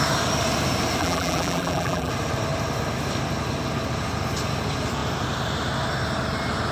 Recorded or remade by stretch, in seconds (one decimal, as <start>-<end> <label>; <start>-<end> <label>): 0.0-1.0 recorded; 1.0-2.1 remade; 2.1-6.7 recorded